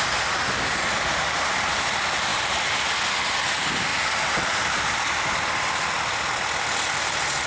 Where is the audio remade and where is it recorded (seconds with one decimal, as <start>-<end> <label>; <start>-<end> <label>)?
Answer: 0.0-2.3 recorded; 2.3-2.8 remade; 2.8-7.5 recorded